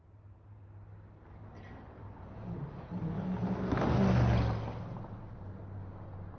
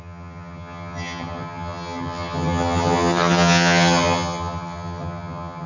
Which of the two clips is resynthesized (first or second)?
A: second